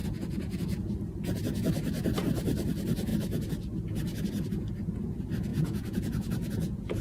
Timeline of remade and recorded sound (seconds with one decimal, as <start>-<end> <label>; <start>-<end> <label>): 0.0-0.9 remade; 0.9-5.5 recorded; 5.5-7.0 remade